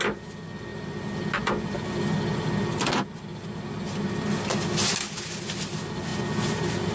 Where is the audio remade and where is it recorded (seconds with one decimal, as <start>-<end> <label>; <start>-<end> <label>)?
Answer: 0.0-6.9 recorded